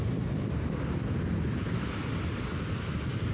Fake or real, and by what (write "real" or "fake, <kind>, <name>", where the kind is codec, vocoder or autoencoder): real